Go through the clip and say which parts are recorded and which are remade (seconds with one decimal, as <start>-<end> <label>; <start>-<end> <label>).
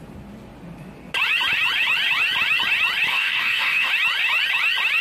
0.0-3.1 recorded; 3.1-3.9 remade; 3.9-5.0 recorded